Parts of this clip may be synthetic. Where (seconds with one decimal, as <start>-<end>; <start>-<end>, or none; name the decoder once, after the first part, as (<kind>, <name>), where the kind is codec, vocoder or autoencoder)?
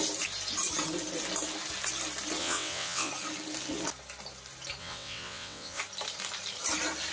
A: 2.4-3.1 (vocoder, WaveNeXt); 4.8-5.8